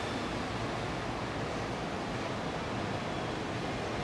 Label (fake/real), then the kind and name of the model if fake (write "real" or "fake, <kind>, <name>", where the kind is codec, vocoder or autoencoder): real